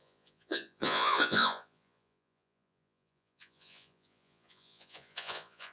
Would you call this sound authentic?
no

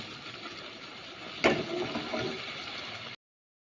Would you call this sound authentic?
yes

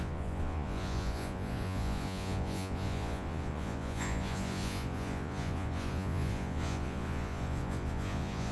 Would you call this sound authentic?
no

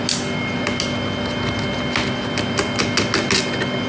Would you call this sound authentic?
yes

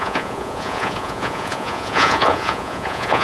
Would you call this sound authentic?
no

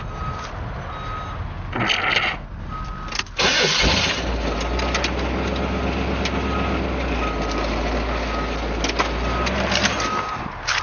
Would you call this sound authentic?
yes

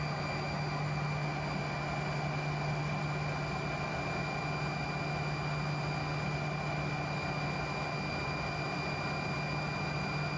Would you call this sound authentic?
yes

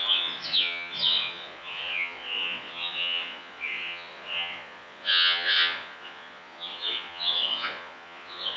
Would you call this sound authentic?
no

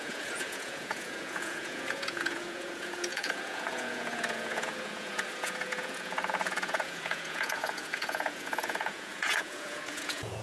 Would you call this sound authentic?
no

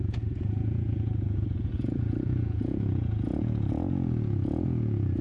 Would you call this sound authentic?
no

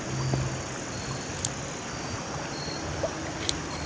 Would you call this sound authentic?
yes